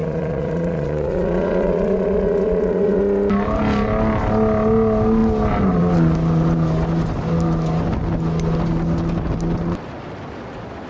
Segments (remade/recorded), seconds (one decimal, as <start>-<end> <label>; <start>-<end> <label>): 0.0-3.0 remade; 3.0-10.9 recorded